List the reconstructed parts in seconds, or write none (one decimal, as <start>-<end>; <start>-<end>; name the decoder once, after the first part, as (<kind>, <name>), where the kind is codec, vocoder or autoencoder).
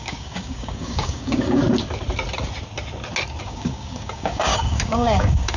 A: 0.0-1.6 (codec, DAC); 3.4-5.6